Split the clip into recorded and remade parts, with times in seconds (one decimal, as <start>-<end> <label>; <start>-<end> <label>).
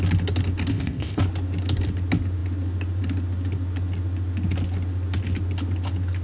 0.0-0.7 recorded; 0.7-1.2 remade; 1.2-6.2 recorded